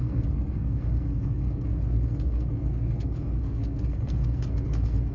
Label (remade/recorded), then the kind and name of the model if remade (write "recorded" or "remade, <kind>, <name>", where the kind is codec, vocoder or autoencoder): remade, codec, SNAC